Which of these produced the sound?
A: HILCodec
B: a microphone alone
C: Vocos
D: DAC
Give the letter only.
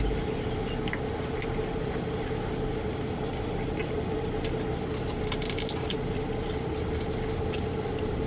B